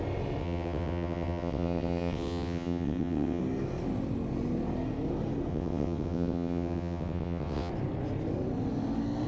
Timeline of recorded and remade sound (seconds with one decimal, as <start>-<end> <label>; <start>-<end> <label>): 0.0-0.4 recorded; 0.4-3.4 remade; 3.4-5.5 recorded; 5.5-7.7 remade; 7.7-9.3 recorded